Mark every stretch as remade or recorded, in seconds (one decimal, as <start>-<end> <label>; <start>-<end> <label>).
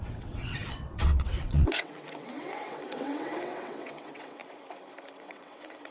0.0-4.4 remade; 4.4-5.2 recorded; 5.2-5.9 remade